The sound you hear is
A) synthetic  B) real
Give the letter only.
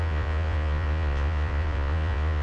A